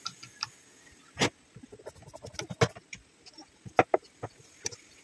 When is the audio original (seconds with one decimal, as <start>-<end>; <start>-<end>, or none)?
0.0-5.0